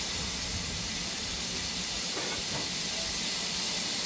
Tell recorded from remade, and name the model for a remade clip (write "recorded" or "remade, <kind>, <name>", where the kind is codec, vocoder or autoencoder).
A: recorded